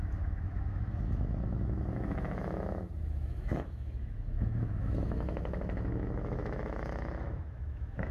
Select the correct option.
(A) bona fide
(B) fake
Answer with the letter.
B